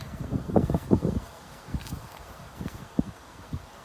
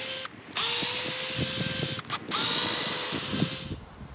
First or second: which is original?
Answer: second